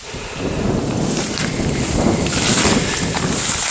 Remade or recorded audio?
recorded